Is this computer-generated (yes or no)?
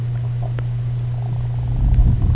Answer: no